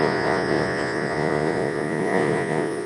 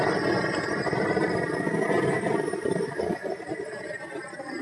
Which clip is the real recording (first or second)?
second